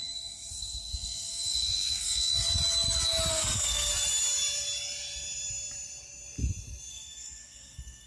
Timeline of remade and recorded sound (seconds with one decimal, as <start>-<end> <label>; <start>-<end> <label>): 0.0-2.3 remade; 2.3-3.3 recorded; 3.3-3.9 remade; 3.9-6.9 recorded; 6.9-8.1 remade